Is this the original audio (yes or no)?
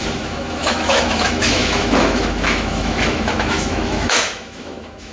no